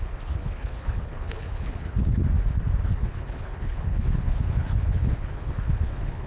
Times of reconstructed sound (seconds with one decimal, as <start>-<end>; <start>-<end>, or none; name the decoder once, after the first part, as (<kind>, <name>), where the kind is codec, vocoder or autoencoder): 0.0-2.2 (codec, HILCodec); 2.8-6.3